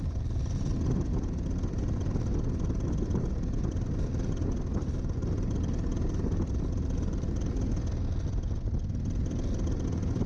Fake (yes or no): no